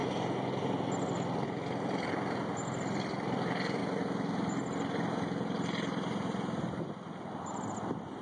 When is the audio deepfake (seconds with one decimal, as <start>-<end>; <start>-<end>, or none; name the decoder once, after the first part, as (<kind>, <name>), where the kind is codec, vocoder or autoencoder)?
0.6-3.8 (vocoder, BigVGAN v2); 6.6-8.2